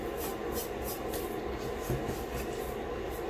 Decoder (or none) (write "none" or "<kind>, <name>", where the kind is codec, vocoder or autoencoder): none